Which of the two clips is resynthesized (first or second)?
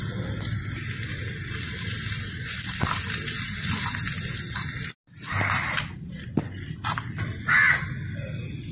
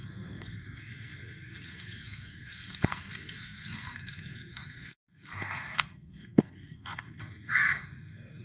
second